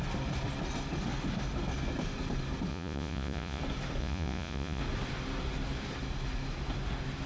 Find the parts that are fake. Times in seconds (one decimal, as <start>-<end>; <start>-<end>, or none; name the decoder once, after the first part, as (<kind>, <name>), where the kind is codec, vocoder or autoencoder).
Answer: 2.7-3.6 (vocoder, Vocos); 4.0-4.8